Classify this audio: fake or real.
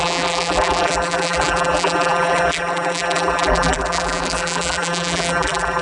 fake